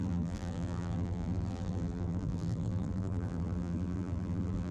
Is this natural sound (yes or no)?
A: no